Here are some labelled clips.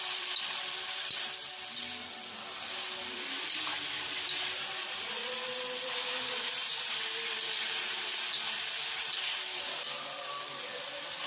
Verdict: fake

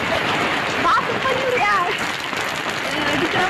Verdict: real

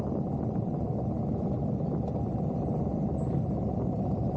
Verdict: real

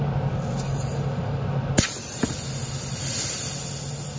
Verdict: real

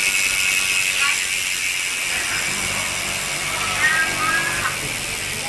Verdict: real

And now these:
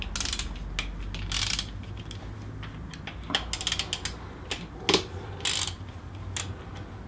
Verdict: real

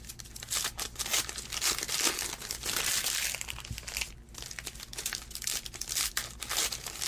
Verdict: real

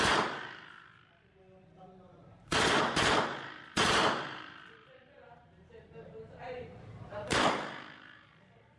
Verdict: fake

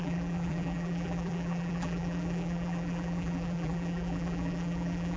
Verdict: fake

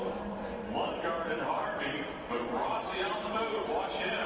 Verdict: fake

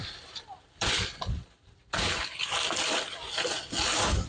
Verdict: fake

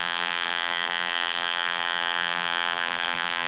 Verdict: fake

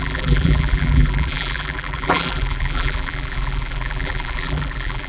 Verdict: fake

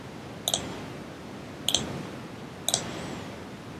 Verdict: real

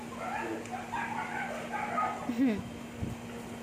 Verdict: real